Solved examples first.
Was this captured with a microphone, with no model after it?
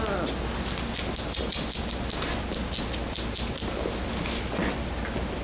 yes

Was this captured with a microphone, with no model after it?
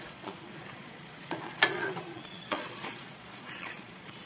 no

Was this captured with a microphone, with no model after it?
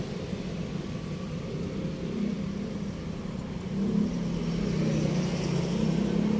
yes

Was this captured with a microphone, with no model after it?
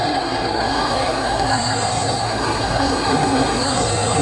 no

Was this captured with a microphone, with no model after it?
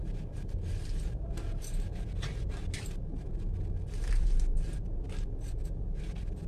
yes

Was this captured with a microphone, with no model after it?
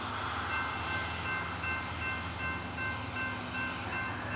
yes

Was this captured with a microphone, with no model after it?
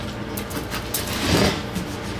yes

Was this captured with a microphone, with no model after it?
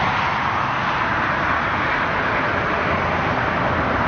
yes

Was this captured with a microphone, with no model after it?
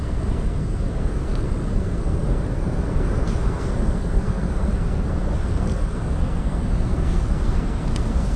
no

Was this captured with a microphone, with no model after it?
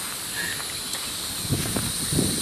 yes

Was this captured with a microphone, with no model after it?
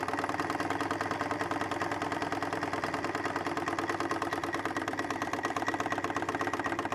yes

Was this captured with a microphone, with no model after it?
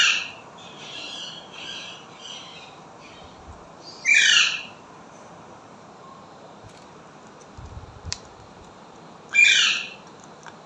no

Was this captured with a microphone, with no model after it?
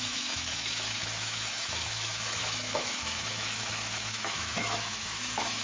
no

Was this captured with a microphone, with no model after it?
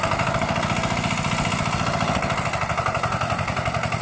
yes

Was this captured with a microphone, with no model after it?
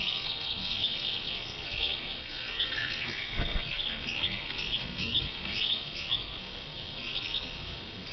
no